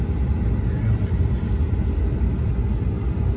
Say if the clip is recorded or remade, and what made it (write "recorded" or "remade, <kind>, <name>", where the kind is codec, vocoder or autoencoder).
recorded